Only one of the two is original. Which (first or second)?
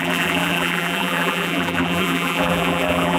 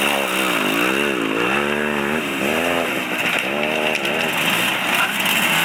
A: second